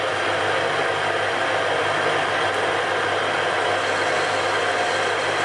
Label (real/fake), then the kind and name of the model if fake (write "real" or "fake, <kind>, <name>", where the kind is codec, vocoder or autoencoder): real